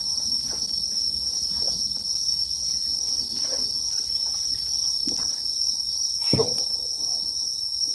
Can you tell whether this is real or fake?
real